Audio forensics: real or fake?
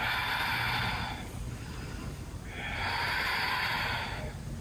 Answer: real